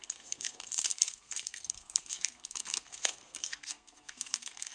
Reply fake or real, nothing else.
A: fake